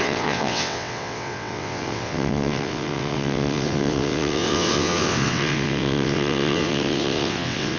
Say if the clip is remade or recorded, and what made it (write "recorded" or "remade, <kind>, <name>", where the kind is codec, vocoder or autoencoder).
remade, vocoder, WaveNeXt